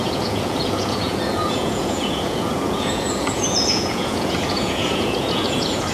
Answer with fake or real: fake